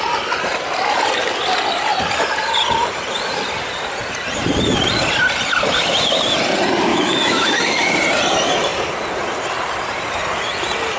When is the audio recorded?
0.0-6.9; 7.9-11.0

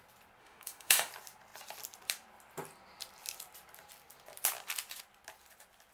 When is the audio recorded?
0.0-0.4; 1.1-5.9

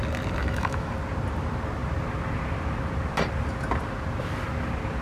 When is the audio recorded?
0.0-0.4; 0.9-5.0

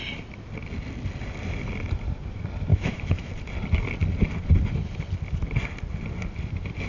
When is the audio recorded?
0.0-2.7; 3.3-6.9

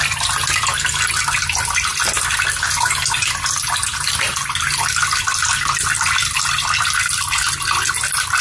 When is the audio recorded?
0.0-8.4